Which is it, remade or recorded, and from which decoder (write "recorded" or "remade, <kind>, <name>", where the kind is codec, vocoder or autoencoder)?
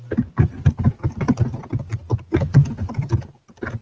recorded